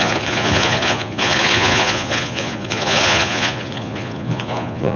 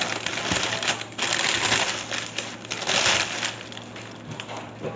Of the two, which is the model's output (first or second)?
first